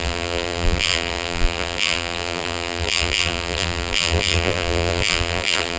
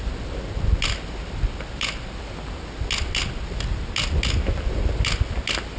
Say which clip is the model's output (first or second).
first